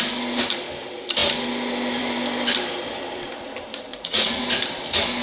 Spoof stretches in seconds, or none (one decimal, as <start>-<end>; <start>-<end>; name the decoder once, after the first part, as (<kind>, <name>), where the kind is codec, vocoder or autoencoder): 3.9-4.4 (vocoder, Vocos)